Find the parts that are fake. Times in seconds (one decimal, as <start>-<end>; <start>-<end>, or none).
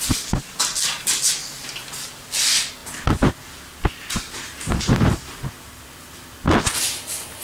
none